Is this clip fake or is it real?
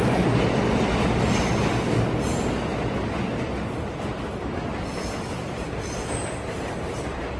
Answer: real